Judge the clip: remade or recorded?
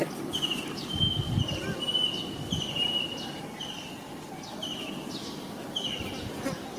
recorded